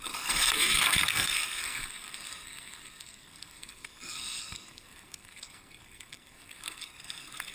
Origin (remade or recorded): remade